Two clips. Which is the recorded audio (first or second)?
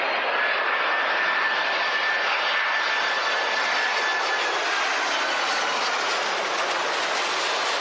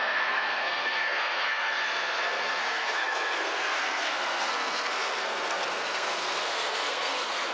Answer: first